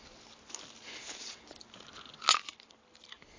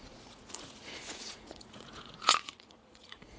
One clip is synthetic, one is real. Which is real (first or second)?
first